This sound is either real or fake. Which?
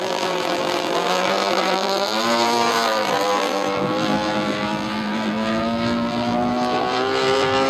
fake